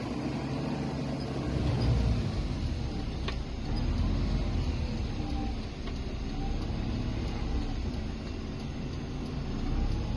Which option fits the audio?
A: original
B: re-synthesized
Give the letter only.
A